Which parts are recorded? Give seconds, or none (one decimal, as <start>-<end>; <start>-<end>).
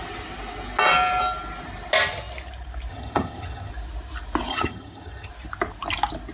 0.0-2.9; 3.7-4.5; 5.3-6.3